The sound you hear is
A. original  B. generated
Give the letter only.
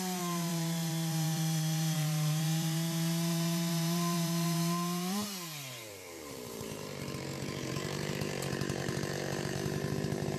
B